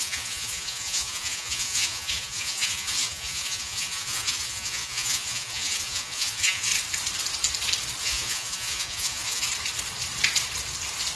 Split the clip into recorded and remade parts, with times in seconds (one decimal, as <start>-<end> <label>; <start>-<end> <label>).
0.0-6.7 remade; 6.7-8.0 recorded; 8.0-9.5 remade; 9.5-11.2 recorded

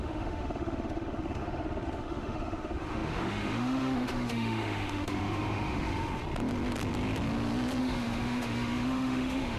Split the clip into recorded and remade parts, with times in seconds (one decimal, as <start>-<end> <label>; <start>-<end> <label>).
0.0-6.2 remade; 6.2-7.8 recorded; 7.8-9.6 remade

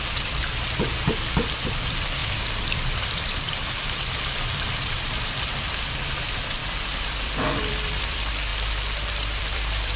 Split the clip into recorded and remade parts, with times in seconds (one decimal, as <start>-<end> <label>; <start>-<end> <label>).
0.0-0.4 remade; 0.4-1.8 recorded; 1.8-8.5 remade; 8.5-9.1 recorded; 9.1-10.0 remade